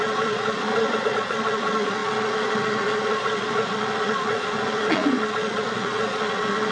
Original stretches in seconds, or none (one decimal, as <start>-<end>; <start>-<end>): none